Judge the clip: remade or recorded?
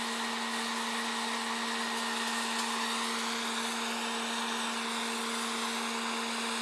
recorded